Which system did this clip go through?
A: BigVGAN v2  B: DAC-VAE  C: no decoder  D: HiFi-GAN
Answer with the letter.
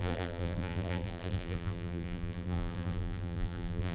A